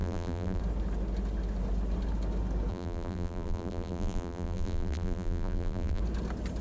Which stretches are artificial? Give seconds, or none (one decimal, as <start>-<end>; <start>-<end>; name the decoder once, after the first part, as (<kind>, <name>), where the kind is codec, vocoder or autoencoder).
0.0-0.6 (vocoder, BigVGAN v2); 2.7-6.0